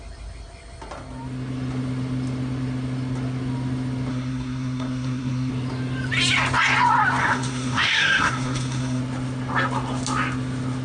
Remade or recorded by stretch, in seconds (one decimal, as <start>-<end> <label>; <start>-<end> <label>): 0.0-4.1 recorded; 4.1-5.5 remade; 5.5-7.2 recorded; 7.2-9.0 remade; 9.0-10.8 recorded